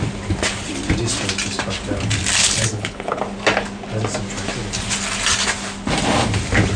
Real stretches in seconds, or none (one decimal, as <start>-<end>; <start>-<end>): 0.0-2.4; 3.2-6.8